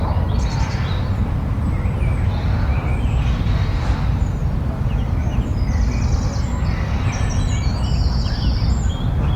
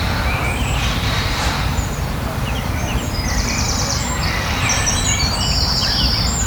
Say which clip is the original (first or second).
first